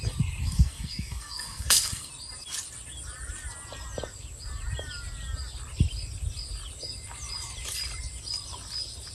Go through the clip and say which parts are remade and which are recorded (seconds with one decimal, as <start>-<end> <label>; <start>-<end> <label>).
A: 0.0-0.4 recorded; 0.4-2.1 remade; 2.1-9.1 recorded